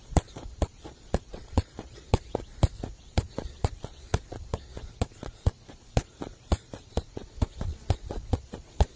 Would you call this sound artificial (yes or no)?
yes